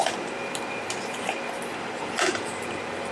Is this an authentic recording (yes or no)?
yes